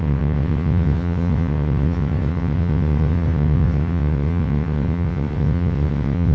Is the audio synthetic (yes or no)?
yes